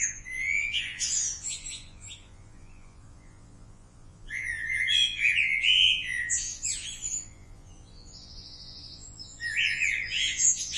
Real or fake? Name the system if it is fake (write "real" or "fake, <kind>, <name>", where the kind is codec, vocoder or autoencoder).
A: fake, vocoder, Vocos